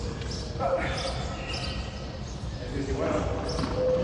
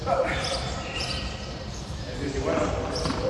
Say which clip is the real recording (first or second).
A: first